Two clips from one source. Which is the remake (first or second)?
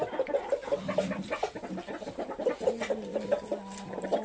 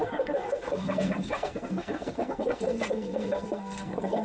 second